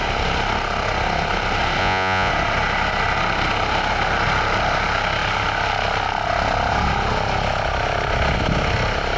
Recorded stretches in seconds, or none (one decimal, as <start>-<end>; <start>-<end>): 0.0-1.8; 2.3-9.2